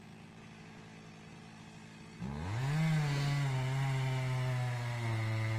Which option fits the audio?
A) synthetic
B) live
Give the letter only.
B